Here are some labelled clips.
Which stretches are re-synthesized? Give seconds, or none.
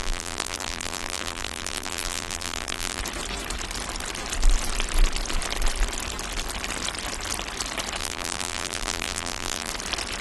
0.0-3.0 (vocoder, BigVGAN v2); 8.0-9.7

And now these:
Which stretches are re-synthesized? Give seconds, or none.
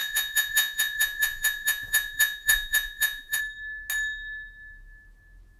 0.0-3.4 (vocoder, Vocos)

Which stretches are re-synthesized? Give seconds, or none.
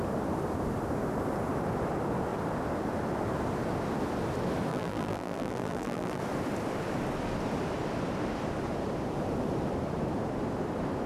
4.7-6.2 (vocoder, BigVGAN v2)